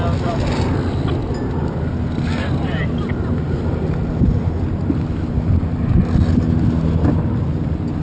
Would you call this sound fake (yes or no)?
no